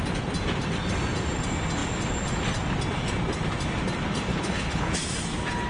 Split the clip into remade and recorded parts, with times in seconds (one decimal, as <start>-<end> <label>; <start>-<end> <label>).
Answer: 0.0-4.3 recorded; 4.3-4.9 remade; 4.9-5.7 recorded